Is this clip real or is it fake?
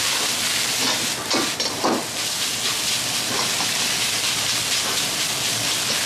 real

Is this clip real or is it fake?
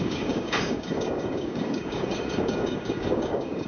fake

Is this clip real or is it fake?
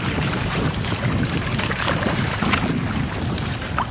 fake